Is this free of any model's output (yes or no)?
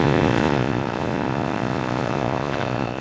no